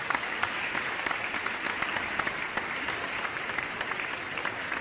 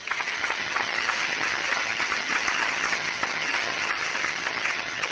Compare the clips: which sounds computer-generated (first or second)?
second